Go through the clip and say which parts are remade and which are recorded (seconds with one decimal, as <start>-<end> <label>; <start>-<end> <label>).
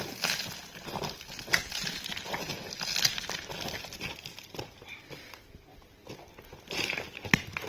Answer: 0.0-3.5 recorded; 3.5-4.2 remade; 4.2-5.7 recorded; 5.7-6.8 remade; 6.8-7.7 recorded